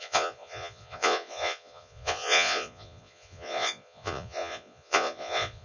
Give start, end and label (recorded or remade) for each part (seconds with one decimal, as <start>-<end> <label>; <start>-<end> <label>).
0.0-5.6 remade